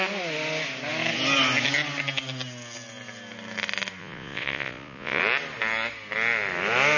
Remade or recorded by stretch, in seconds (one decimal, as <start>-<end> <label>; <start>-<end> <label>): 0.0-4.0 recorded; 4.0-5.2 remade; 5.2-7.0 recorded